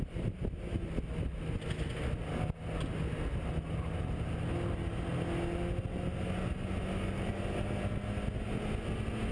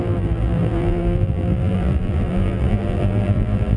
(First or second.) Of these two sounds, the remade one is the second